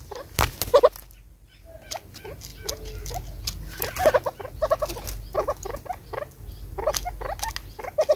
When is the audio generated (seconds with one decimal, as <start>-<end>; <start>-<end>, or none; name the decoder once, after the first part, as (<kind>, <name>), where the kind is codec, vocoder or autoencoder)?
none